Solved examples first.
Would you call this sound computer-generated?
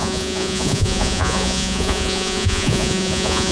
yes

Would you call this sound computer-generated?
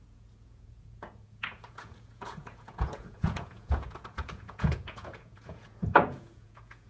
yes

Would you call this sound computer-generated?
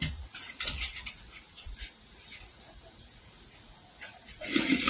yes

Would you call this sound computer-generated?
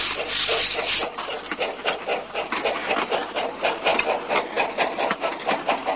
no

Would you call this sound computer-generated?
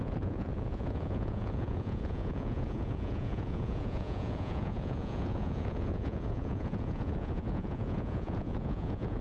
yes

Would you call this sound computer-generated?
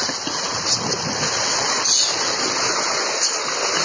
no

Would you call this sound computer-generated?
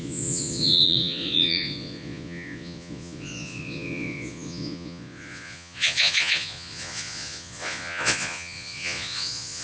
yes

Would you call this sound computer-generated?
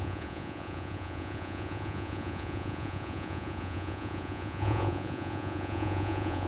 yes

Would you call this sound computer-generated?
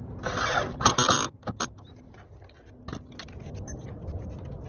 no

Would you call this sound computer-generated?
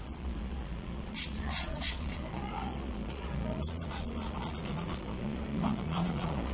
yes